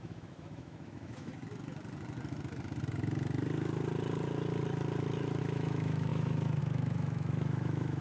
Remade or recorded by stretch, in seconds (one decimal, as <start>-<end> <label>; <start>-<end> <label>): 0.0-1.3 remade; 1.3-5.4 recorded; 5.4-8.0 remade